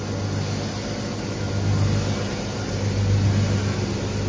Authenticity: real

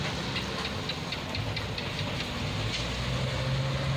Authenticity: real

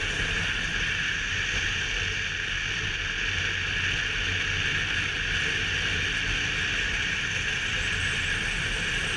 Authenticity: real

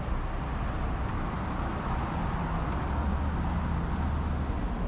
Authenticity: real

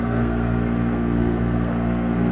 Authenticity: fake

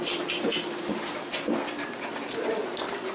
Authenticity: real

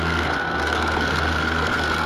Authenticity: fake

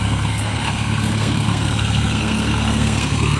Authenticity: fake